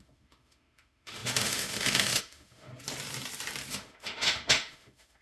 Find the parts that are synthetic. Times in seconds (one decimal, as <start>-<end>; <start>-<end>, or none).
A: 0.0-2.7; 3.7-5.2